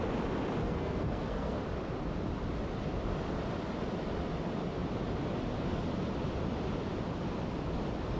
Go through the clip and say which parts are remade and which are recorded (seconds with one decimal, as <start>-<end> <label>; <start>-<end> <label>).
0.0-0.6 recorded; 0.6-1.6 remade; 1.6-8.2 recorded